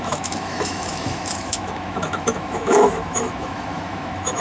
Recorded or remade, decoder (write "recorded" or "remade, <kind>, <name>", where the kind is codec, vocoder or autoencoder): remade, autoencoder, DAC-VAE